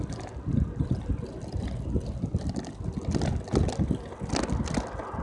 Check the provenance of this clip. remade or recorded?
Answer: recorded